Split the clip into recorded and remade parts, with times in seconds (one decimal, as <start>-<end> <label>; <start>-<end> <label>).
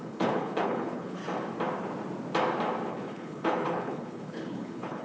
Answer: 0.0-1.2 remade; 1.2-2.9 recorded; 2.9-5.0 remade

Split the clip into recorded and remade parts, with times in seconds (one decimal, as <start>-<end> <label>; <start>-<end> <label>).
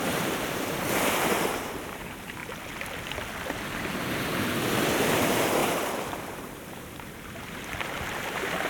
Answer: 0.0-2.4 remade; 2.4-5.0 recorded; 5.0-8.7 remade